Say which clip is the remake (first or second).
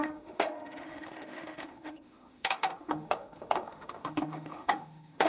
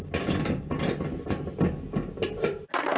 first